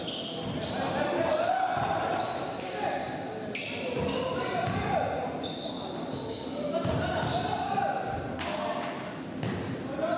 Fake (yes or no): no